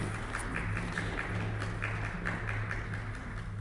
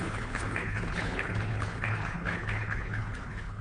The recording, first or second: first